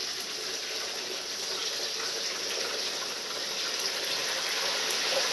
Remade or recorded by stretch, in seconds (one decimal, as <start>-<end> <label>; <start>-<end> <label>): 0.0-0.8 recorded; 0.8-1.6 remade; 1.6-2.7 recorded; 2.7-5.3 remade